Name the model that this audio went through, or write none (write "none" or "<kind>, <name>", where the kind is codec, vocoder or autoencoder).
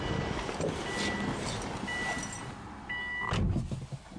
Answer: none